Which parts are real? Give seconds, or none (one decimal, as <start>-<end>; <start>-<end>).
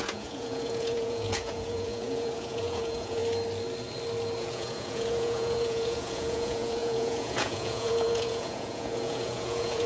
3.2-4.4